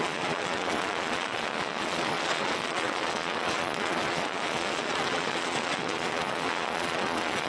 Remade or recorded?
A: remade